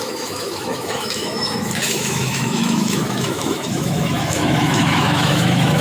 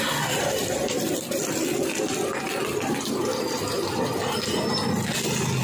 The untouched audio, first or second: second